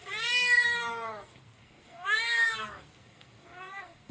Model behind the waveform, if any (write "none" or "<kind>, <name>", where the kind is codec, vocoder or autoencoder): codec, SNAC